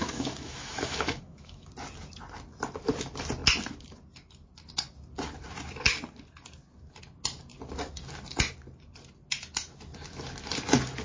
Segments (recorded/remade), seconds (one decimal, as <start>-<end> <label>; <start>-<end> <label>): 0.0-1.7 remade; 1.7-11.0 recorded

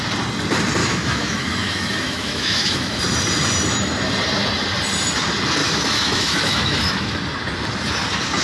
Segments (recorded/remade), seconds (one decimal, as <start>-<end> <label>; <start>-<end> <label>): 0.0-0.8 recorded; 0.8-3.0 remade; 3.0-5.6 recorded; 5.6-7.2 remade; 7.2-8.4 recorded

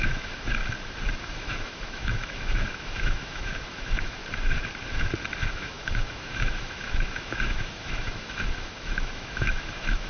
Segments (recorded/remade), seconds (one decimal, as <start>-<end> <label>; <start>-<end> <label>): 0.0-0.6 remade; 0.6-1.2 recorded; 1.2-4.2 remade; 4.2-5.5 recorded; 5.5-10.1 remade

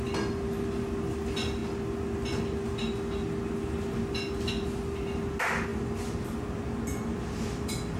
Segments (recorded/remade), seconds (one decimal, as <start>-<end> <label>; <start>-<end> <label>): 0.0-8.0 recorded

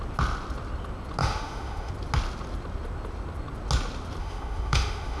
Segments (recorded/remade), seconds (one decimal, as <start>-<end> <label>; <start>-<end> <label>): 0.0-1.2 recorded; 1.2-1.9 remade; 1.9-4.2 recorded; 4.2-5.2 remade

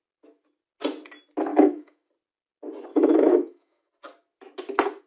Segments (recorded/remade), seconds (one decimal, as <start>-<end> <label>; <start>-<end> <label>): 0.0-1.5 recorded; 1.5-2.1 remade; 2.1-2.9 recorded; 2.9-3.9 remade; 3.9-5.1 recorded